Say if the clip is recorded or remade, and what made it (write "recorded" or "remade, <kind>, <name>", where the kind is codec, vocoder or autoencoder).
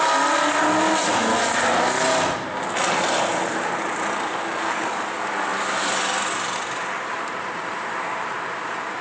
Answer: recorded